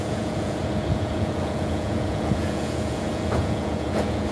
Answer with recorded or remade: remade